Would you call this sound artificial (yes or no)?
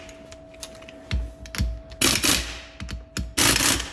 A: no